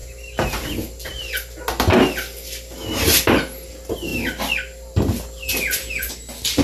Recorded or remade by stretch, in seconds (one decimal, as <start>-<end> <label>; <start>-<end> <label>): 0.0-6.6 recorded

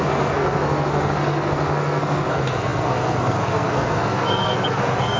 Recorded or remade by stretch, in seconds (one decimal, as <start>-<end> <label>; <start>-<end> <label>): 0.0-5.2 remade

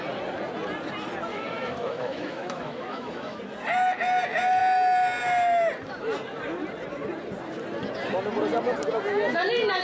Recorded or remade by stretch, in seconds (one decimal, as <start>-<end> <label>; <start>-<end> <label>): 0.0-1.3 recorded; 1.3-3.4 remade; 3.4-9.8 recorded

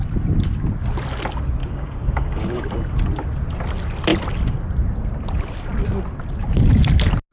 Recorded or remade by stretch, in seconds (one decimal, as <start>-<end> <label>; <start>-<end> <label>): 0.0-1.6 recorded; 1.6-2.6 remade; 2.6-7.3 recorded